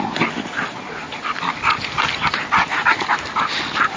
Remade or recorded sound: recorded